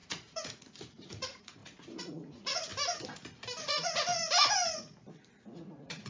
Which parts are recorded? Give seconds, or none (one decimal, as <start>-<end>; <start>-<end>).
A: 2.7-3.6; 4.1-5.6